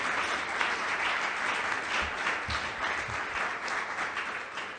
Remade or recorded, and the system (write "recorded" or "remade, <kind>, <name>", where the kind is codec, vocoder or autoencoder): recorded